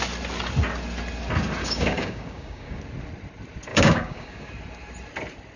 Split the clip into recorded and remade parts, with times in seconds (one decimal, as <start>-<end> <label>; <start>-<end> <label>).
0.0-1.6 recorded; 1.6-2.8 remade; 2.8-3.7 recorded; 3.7-4.5 remade; 4.5-5.6 recorded